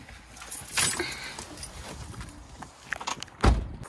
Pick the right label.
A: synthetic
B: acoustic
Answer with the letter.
B